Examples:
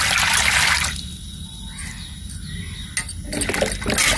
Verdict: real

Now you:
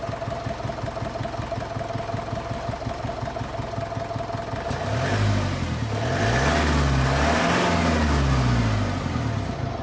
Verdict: real